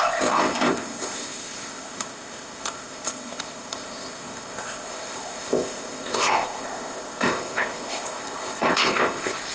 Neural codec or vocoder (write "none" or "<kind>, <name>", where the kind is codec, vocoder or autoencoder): codec, ZipCodec